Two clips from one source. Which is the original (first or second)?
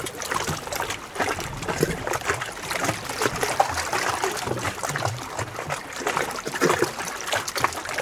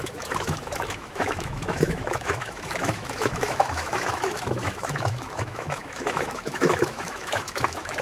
first